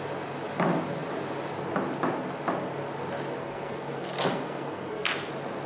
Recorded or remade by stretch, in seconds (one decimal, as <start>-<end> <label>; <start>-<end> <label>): 0.0-3.4 recorded; 3.4-5.3 remade; 5.3-5.7 recorded

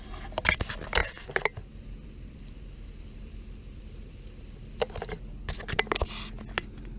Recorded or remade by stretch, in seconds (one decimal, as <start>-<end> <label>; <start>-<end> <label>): 0.0-1.0 recorded; 1.0-5.2 remade; 5.2-7.0 recorded

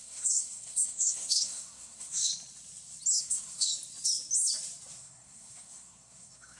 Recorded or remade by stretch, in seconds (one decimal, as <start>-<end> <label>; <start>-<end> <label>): 0.0-2.3 remade; 2.3-3.2 recorded; 3.2-3.7 remade; 3.7-4.9 recorded; 4.9-6.6 remade

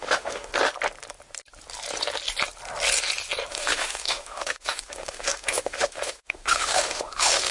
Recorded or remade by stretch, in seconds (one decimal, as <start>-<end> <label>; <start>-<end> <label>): 0.0-0.5 remade; 0.5-3.5 recorded; 3.5-7.5 remade

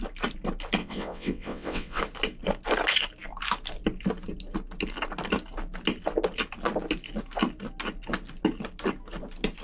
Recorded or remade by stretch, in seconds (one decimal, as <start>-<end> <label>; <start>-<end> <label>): 0.0-0.8 recorded; 0.8-2.0 remade; 2.0-9.6 recorded

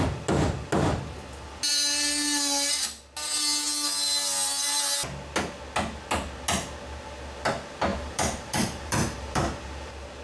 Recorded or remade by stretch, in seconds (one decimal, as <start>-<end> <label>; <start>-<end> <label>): 0.0-7.9 recorded; 7.9-9.4 remade; 9.4-10.2 recorded

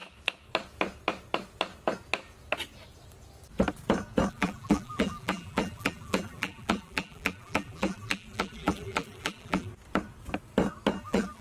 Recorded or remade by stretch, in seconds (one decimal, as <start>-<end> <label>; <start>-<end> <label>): 0.0-4.3 recorded; 4.3-9.7 remade; 9.7-11.0 recorded; 11.0-11.4 remade

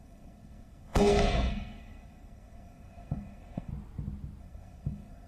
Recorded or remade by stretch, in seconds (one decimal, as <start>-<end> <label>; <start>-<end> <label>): 0.0-3.7 remade; 3.7-4.4 recorded; 4.4-5.3 remade